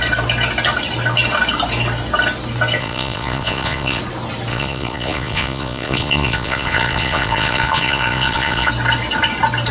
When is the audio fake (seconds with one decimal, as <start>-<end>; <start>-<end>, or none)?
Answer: 2.8-4.0; 4.5-8.7